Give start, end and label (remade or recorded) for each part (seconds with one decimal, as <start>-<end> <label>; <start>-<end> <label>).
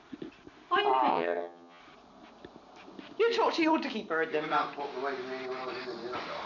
0.0-1.1 recorded; 1.1-1.8 remade; 1.8-6.5 recorded